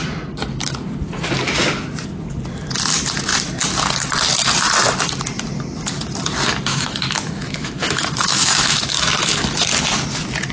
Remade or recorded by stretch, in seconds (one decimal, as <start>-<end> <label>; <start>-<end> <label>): 0.0-6.7 recorded; 6.7-9.7 remade; 9.7-10.5 recorded